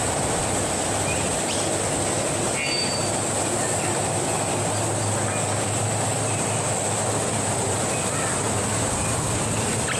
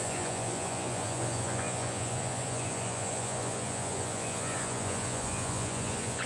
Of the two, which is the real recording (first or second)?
first